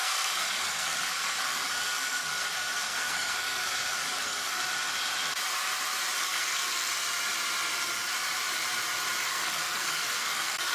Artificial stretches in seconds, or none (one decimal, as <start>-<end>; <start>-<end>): 0.0-4.6; 6.2-6.9; 9.2-10.7